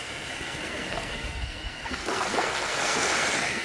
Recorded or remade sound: remade